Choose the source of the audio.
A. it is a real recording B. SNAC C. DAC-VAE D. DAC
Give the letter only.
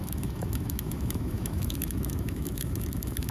C